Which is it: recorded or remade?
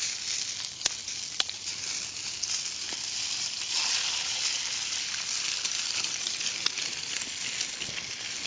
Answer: remade